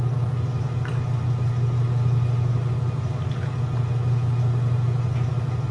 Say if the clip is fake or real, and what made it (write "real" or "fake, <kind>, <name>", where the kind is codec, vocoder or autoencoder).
real